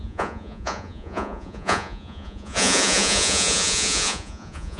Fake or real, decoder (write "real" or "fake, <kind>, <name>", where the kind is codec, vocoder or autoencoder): fake, vocoder, Vocos